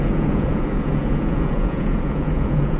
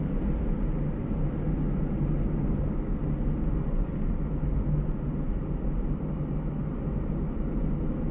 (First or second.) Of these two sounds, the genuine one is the second